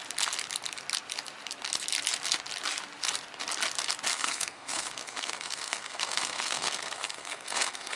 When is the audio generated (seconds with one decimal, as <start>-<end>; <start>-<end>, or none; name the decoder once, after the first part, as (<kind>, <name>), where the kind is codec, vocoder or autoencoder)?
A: 4.1-8.0 (codec, SNAC)